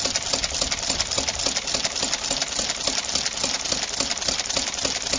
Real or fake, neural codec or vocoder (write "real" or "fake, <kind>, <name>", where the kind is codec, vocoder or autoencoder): real